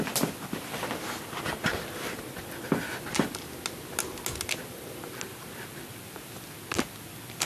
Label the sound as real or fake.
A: real